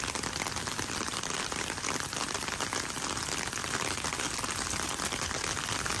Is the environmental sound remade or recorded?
recorded